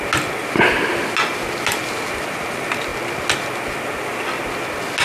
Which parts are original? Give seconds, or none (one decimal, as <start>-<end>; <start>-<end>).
0.0-5.0